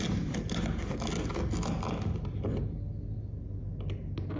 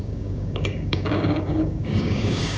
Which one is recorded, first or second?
first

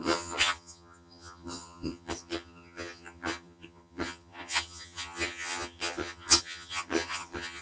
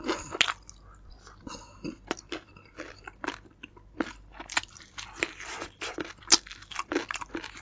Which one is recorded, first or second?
second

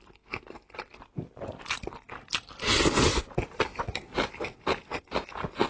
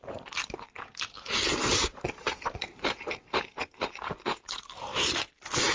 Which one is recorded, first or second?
first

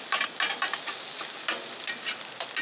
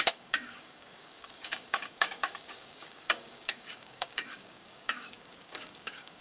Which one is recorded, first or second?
first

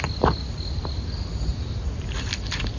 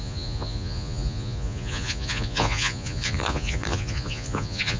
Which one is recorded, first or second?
first